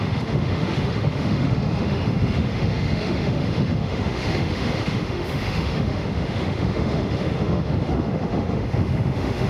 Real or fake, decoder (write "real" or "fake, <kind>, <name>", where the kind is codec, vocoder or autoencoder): fake, autoencoder, DAC-VAE